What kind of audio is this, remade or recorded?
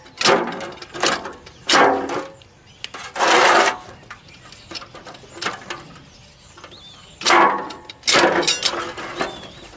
recorded